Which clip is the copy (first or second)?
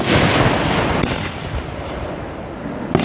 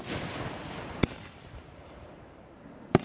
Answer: second